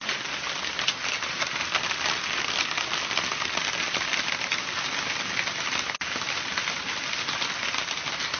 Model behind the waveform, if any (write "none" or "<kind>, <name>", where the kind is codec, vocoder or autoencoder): none